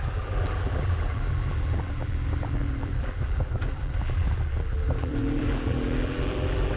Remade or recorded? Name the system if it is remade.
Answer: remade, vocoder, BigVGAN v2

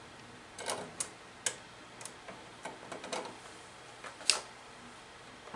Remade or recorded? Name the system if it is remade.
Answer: recorded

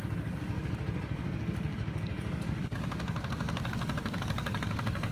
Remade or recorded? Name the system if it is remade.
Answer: remade, codec, DAC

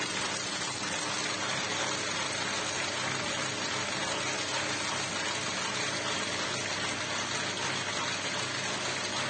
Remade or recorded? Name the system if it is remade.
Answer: recorded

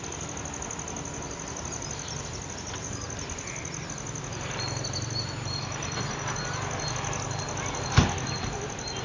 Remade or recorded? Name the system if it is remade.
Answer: recorded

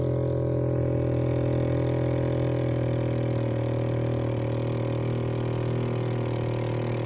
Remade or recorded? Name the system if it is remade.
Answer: recorded